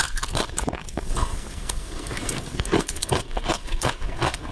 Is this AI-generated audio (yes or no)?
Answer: yes